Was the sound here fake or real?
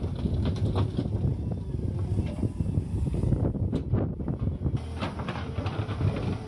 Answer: real